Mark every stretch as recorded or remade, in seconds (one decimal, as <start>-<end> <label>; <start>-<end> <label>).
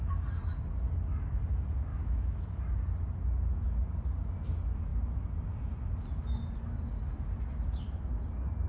0.0-1.9 recorded; 1.9-2.6 remade; 2.6-8.7 recorded